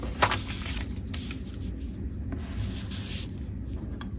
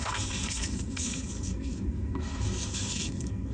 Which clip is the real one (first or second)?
first